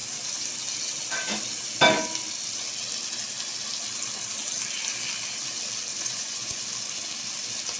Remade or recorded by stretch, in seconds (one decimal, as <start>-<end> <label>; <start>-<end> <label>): 0.0-5.9 recorded; 5.9-6.6 remade; 6.6-7.8 recorded